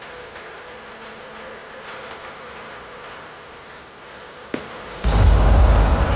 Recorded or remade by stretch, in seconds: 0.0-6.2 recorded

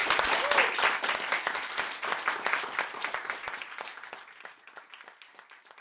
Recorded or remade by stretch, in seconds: 0.0-5.8 recorded

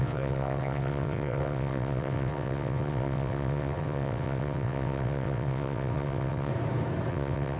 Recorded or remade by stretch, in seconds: 0.0-6.5 remade; 6.5-7.1 recorded; 7.1-7.6 remade

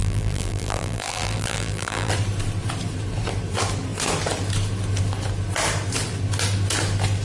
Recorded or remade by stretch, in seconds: 0.0-2.1 remade; 2.1-7.2 recorded

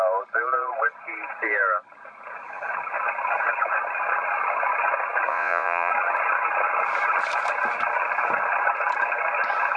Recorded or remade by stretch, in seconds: 0.0-5.3 recorded; 5.3-5.9 remade; 5.9-9.8 recorded

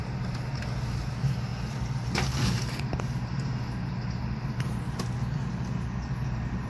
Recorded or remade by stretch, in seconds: 0.0-6.7 recorded

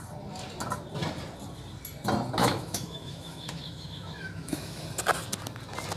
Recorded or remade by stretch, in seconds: 0.0-2.4 recorded; 2.4-4.8 remade; 4.8-6.0 recorded